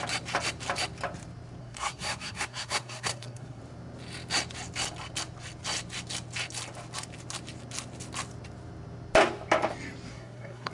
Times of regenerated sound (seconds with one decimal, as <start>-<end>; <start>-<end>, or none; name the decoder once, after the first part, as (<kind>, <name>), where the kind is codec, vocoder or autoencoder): 1.6-3.6 (codec, SNAC); 10.1-10.7